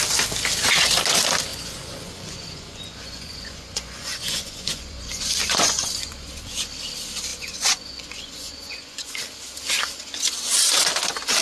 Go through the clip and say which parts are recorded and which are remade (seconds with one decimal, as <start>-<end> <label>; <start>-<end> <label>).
0.0-1.5 recorded; 1.5-6.7 remade; 6.7-7.3 recorded; 7.3-9.2 remade; 9.2-11.4 recorded